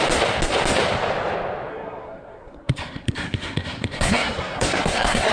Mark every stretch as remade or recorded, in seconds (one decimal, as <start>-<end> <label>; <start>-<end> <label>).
0.0-1.7 recorded; 1.7-5.3 remade